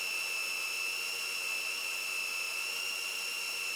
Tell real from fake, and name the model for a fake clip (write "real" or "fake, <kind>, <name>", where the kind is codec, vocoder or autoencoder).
real